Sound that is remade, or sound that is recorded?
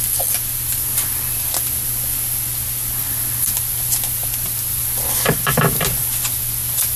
recorded